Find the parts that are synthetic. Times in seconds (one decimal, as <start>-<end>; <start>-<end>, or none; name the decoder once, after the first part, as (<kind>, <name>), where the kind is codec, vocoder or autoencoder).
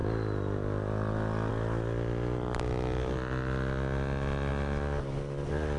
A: none